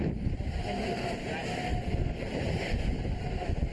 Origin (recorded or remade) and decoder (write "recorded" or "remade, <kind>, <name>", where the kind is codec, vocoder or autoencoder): recorded